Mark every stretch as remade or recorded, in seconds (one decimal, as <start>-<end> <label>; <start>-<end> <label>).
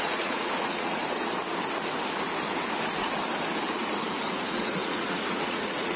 0.0-1.0 remade; 1.0-4.1 recorded; 4.1-6.0 remade